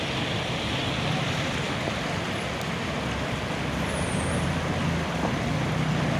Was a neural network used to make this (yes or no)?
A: no